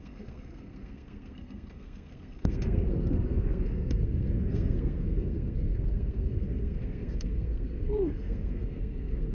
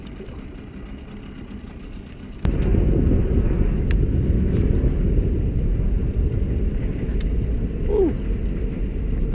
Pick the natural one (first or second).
second